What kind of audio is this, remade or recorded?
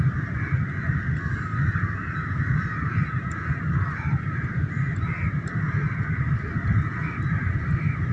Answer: remade